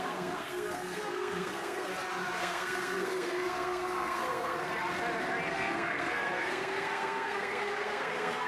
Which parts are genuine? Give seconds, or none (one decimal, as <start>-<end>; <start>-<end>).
1.9-2.4; 4.7-5.5

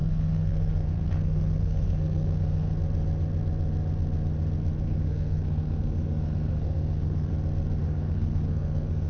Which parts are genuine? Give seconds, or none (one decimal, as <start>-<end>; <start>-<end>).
2.7-4.8; 7.3-7.8